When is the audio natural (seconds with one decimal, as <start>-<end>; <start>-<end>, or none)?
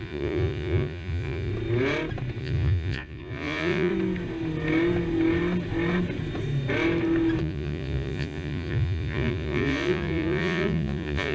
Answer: 1.5-2.4; 3.9-7.4